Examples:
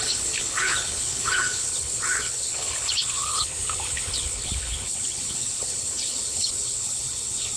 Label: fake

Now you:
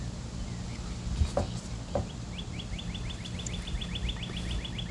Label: real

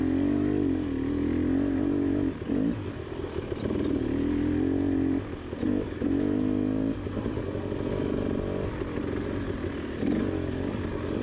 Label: real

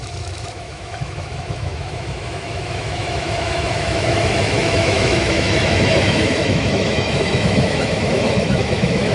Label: fake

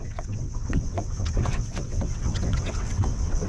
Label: fake